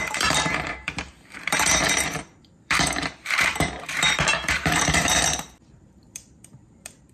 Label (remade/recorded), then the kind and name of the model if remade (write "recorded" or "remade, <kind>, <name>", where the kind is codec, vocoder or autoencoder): remade, vocoder, BigVGAN v2